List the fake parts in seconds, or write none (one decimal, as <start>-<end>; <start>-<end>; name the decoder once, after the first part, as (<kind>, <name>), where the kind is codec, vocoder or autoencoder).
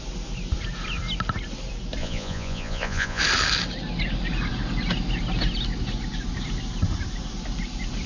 2.0-3.2 (vocoder, Vocos)